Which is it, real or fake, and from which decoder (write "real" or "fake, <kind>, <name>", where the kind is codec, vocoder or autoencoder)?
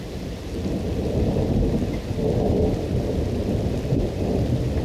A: real